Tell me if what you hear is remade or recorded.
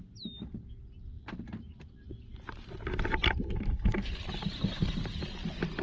recorded